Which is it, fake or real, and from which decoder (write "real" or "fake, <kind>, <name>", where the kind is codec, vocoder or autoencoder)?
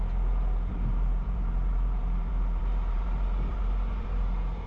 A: fake, vocoder, BigVGAN v2